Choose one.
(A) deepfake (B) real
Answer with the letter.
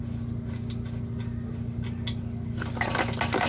B